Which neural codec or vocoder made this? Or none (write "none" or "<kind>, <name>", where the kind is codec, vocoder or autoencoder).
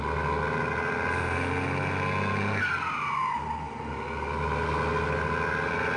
none